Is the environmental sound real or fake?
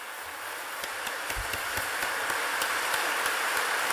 real